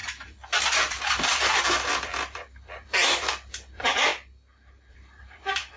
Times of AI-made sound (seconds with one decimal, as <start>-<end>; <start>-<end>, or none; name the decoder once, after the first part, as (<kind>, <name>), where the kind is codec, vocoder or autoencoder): 0.0-4.1 (vocoder, BigVGAN v2); 4.9-5.8